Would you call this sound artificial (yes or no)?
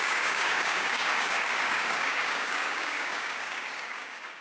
yes